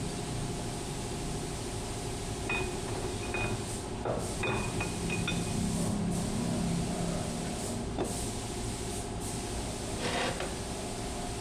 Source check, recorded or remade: recorded